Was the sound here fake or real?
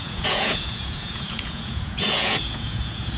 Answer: fake